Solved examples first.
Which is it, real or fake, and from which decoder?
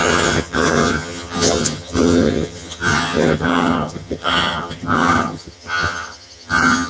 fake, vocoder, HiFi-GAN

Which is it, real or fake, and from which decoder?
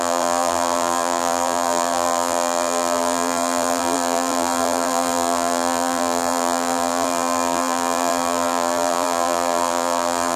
fake, vocoder, BigVGAN v2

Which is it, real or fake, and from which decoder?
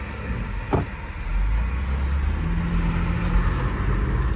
real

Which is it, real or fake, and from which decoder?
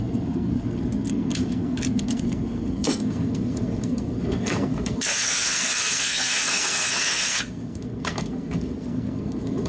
fake, codec, SNAC